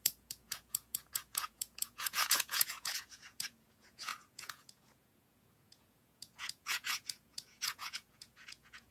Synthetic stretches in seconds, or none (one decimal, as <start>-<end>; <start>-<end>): 0.0-8.9

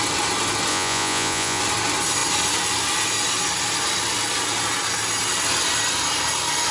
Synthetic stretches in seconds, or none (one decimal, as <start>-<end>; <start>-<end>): 0.7-1.6

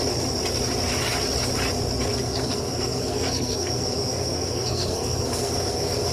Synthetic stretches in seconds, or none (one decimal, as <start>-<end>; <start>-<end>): 2.1-6.1

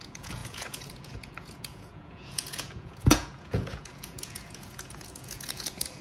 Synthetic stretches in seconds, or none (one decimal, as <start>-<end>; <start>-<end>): 0.0-6.0